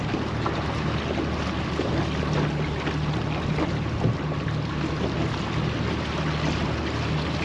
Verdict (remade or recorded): recorded